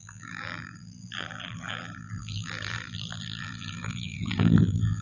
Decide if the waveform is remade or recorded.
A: remade